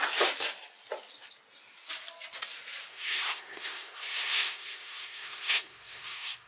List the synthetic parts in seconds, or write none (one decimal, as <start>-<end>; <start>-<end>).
2.9-6.5